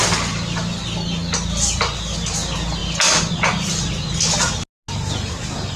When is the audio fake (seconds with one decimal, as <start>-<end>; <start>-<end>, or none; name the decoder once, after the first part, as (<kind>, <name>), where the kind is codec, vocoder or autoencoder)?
none